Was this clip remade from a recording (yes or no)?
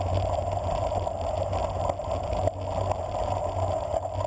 no